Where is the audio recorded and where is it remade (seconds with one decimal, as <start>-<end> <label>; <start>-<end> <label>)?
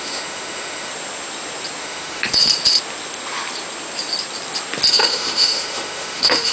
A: 0.0-0.9 remade; 0.9-1.8 recorded; 1.8-2.2 remade; 2.2-4.9 recorded; 4.9-6.5 remade